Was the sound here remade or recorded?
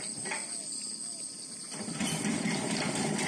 recorded